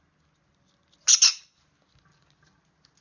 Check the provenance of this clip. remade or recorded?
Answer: recorded